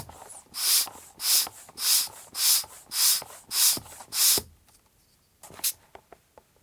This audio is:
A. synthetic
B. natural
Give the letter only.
B